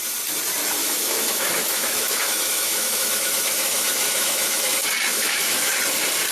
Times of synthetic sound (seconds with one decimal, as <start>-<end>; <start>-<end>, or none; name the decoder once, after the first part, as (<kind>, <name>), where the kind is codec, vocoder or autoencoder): 0.8-4.6 (autoencoder, DAC-VAE); 5.1-5.7